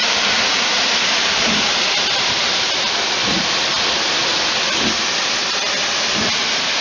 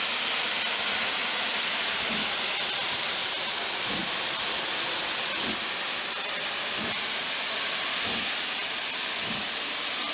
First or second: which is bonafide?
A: second